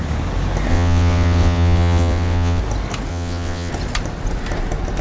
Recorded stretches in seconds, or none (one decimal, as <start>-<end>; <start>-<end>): 0.0-0.7; 2.6-3.1; 3.7-5.0